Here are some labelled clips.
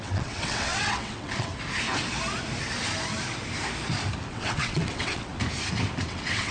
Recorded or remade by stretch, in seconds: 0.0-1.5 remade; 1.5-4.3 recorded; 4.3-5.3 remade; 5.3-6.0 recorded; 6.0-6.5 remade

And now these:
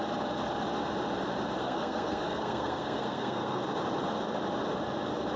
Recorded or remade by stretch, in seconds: 0.0-1.6 recorded; 1.6-3.6 remade; 3.6-5.4 recorded

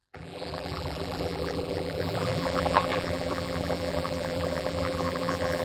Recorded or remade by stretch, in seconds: 0.0-5.6 remade